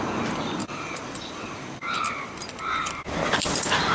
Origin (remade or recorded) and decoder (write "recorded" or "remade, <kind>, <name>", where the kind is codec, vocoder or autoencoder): remade, vocoder, BigVGAN v2